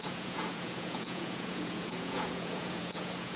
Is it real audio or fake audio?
fake